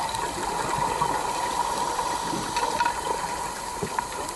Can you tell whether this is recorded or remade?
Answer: recorded